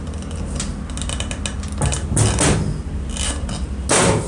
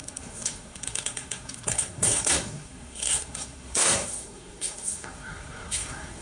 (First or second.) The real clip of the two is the first